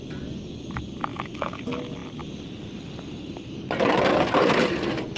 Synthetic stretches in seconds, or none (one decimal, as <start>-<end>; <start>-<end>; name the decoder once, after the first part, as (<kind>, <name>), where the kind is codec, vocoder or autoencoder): 1.1-1.6 (autoencoder, DAC-VAE)